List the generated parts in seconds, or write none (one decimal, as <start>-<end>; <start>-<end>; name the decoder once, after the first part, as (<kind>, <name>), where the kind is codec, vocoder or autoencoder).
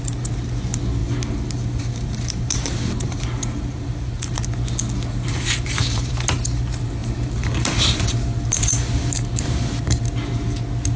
1.0-4.4 (vocoder, BigVGAN v2); 5.1-6.1; 7.0-10.0